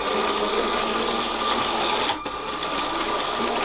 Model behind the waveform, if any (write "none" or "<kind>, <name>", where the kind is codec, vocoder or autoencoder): none